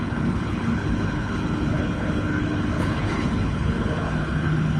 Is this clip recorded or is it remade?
remade